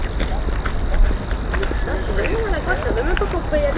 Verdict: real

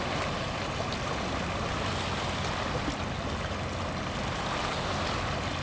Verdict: real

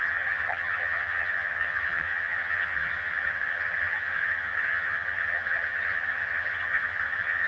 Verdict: fake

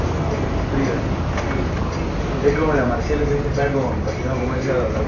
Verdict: real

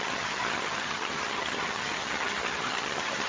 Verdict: fake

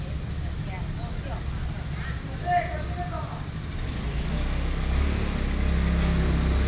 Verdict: real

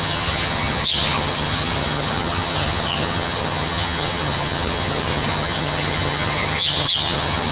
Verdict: fake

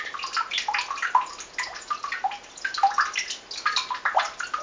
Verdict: real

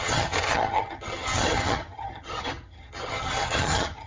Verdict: fake